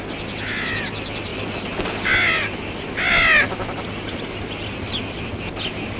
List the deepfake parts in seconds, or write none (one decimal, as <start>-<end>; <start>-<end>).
none